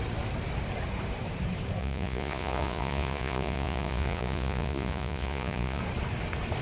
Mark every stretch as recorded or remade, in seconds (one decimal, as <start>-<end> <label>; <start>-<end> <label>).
0.0-1.8 recorded; 1.8-5.8 remade; 5.8-6.6 recorded